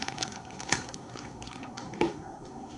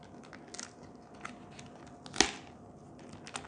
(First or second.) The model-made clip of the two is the first